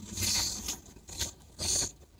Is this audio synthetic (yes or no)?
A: no